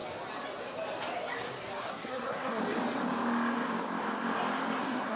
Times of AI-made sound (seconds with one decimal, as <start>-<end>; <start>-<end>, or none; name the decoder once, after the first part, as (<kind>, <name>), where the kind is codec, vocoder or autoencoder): 1.9-2.6 (codec, SNAC); 4.8-5.2